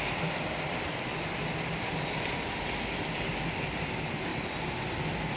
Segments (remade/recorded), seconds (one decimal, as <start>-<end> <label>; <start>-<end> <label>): 0.0-5.4 recorded

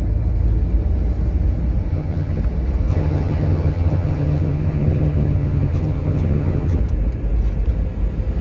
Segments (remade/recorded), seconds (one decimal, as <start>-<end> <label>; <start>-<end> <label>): 0.0-1.9 recorded; 1.9-2.4 remade; 2.4-2.9 recorded; 2.9-6.8 remade; 6.8-8.4 recorded

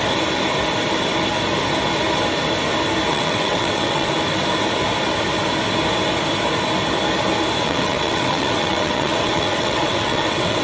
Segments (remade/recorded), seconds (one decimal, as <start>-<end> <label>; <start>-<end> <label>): 0.0-3.1 recorded; 3.1-4.1 remade; 4.1-7.6 recorded; 7.6-10.6 remade

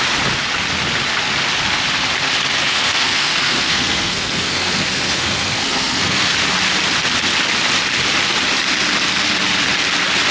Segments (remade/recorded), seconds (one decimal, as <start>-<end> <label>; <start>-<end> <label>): 0.0-2.7 recorded; 2.7-6.3 remade; 6.3-10.3 recorded

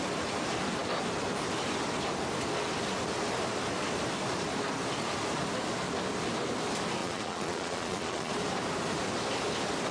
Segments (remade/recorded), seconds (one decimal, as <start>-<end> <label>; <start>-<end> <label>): 0.0-7.0 recorded; 7.0-8.3 remade; 8.3-9.9 recorded

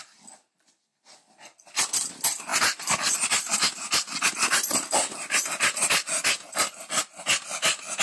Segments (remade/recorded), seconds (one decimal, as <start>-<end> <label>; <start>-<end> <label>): 0.0-8.0 recorded